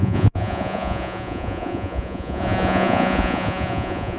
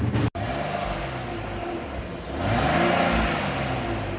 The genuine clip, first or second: second